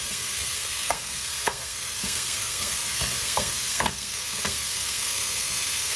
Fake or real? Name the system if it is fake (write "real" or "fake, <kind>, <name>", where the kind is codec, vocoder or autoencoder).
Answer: fake, codec, SNAC